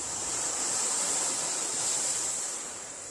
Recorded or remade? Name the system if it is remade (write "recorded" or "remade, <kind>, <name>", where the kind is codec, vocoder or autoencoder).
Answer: remade, vocoder, BigVGAN v2